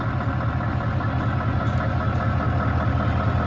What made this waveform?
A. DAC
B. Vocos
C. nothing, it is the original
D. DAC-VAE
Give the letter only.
C